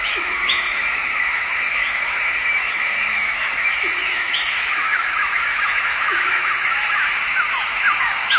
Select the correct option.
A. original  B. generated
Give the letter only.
B